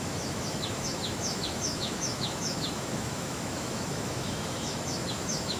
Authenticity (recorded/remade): remade